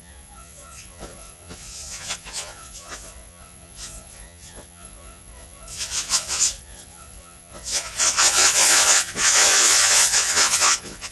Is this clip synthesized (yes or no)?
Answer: yes